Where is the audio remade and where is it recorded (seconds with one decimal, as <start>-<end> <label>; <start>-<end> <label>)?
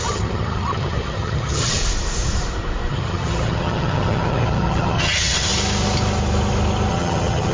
0.0-1.8 remade; 1.8-2.9 recorded; 2.9-5.5 remade; 5.5-6.9 recorded; 6.9-7.5 remade